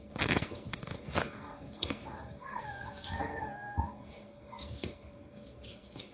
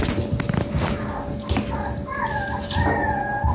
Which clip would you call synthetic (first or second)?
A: first